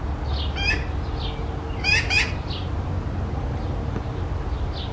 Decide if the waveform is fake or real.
real